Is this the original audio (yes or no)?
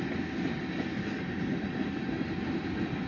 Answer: yes